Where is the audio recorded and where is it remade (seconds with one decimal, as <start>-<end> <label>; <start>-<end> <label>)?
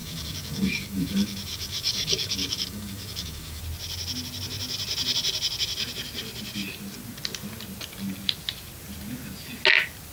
0.0-3.6 remade; 3.6-10.1 recorded